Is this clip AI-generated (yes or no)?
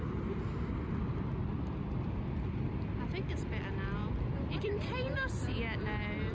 no